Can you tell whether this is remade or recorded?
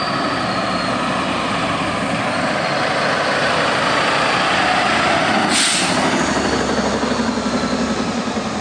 recorded